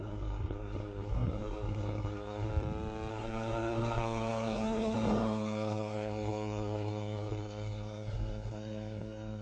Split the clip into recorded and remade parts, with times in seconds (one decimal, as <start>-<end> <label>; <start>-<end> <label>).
0.0-2.5 remade; 2.5-3.1 recorded; 3.1-9.4 remade